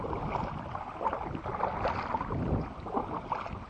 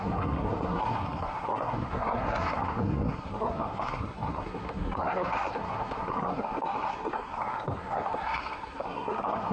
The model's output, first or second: second